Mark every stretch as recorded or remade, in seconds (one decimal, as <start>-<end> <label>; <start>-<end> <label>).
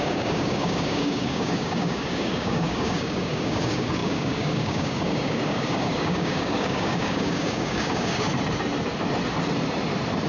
0.0-8.3 remade; 8.3-10.3 recorded